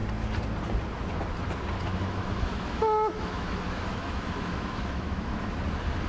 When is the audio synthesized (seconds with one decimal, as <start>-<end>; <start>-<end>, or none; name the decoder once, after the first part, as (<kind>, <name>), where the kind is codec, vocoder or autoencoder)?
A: 1.9-5.6 (autoencoder, DAC-VAE)